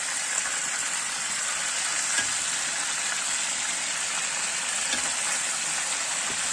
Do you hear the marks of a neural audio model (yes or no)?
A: no